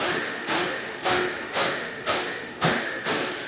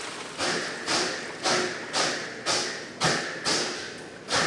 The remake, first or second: first